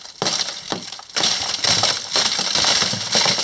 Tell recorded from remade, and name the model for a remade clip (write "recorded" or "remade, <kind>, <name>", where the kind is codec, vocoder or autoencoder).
recorded